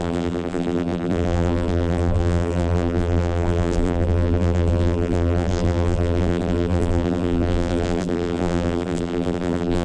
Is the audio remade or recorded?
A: remade